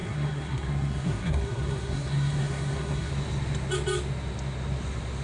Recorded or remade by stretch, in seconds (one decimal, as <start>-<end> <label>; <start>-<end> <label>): 0.0-3.1 remade; 3.1-5.2 recorded